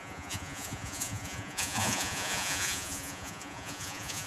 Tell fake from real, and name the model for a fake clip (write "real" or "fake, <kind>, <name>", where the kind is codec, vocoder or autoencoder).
fake, vocoder, Vocos